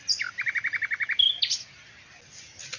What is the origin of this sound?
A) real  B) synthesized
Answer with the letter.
A